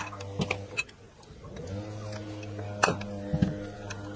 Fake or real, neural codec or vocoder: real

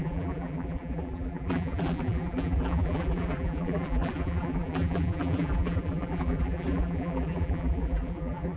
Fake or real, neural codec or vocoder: fake, vocoder, BigVGAN v2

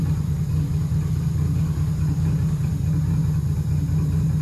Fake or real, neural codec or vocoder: real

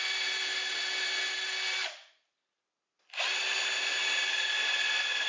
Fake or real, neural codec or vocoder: real